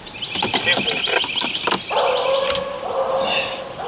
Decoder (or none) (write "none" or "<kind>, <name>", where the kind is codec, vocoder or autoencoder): none